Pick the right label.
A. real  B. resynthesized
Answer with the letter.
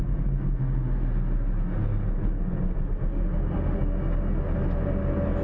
A